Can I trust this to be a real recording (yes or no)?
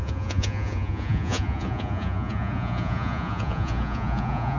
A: no